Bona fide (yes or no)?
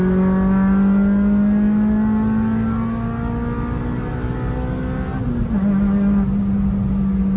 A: yes